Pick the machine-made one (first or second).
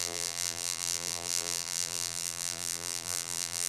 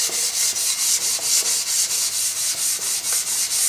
first